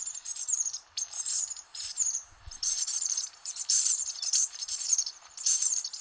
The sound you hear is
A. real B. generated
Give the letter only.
B